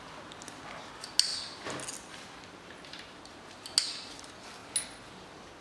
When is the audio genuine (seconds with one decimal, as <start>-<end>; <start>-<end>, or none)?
0.0-5.6